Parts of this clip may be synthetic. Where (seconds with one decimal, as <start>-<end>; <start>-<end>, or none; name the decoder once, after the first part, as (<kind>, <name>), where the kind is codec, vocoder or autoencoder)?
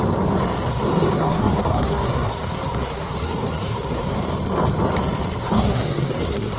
0.7-4.2 (codec, SNAC); 5.4-6.6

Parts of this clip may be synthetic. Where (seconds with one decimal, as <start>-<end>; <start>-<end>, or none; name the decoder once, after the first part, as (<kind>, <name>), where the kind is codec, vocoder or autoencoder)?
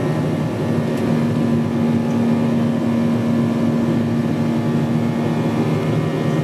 none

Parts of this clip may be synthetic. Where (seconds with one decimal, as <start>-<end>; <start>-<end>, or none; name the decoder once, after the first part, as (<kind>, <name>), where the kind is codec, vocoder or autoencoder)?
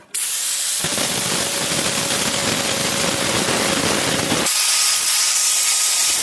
none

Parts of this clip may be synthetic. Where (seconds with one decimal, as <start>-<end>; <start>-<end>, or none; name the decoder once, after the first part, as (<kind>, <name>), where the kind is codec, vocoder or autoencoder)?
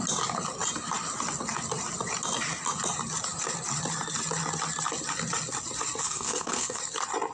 6.0-6.8 (codec, SNAC)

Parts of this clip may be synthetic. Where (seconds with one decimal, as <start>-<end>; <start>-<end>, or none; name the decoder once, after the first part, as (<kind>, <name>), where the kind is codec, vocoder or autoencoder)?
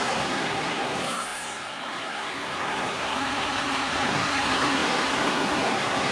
0.0-6.1 (codec, SNAC)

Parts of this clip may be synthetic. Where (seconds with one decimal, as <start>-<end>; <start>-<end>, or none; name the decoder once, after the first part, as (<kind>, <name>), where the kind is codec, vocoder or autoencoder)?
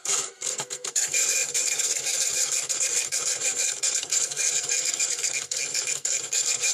0.0-6.7 (codec, SNAC)